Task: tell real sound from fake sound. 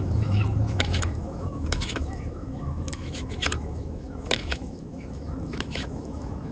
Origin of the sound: fake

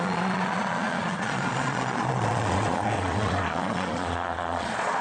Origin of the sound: fake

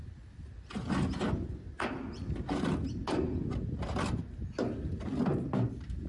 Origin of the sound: real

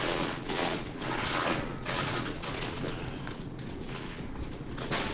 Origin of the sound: fake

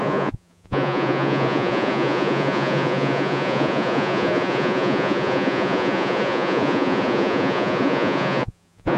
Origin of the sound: fake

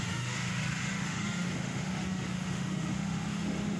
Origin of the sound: fake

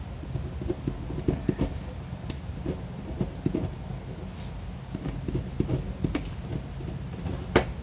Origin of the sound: real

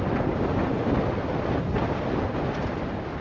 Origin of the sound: real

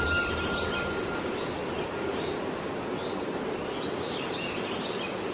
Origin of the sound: real